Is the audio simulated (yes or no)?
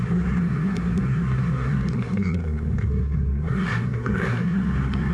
yes